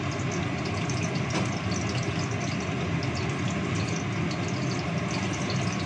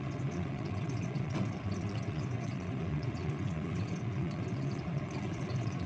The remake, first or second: second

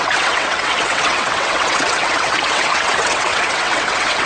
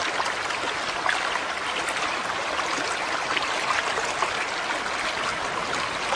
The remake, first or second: first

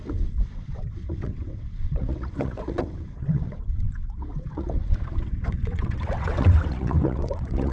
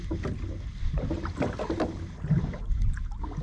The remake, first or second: first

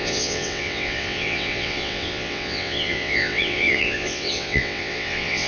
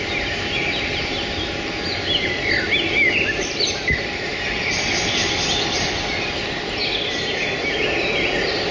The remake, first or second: first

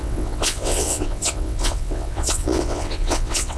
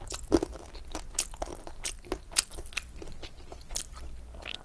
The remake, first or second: first